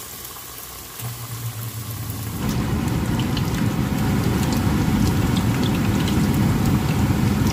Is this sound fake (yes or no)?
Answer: yes